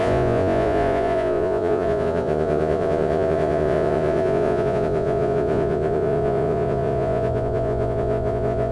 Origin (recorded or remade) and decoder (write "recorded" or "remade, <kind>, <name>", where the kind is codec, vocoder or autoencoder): remade, vocoder, Vocos